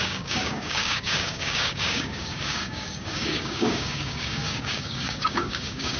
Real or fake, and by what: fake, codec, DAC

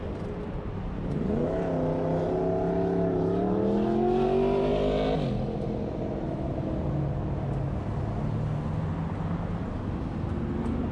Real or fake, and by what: real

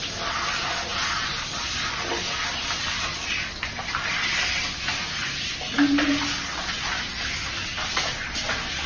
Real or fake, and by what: real